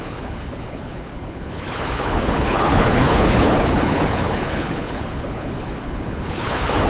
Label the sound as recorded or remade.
remade